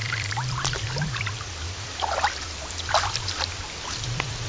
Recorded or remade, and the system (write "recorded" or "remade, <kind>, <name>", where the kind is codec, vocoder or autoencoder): remade, vocoder, BigVGAN v2